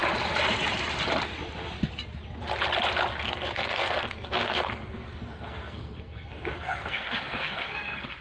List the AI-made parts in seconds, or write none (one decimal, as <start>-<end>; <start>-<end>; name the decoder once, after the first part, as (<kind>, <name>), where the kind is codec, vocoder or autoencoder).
3.1-8.2 (codec, SNAC)